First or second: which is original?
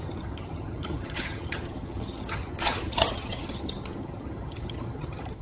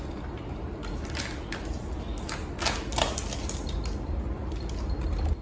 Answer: second